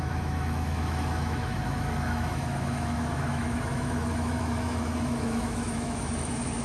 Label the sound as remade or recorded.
remade